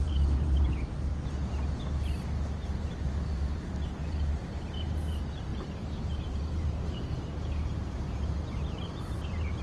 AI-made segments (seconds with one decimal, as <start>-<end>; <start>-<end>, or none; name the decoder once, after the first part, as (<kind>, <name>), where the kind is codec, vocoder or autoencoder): 0.0-1.1 (vocoder, BigVGAN v2); 2.7-9.6